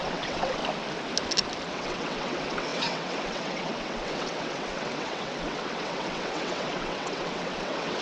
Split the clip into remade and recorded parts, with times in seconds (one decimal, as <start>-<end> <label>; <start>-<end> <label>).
0.0-0.6 remade; 0.6-1.7 recorded; 1.7-8.0 remade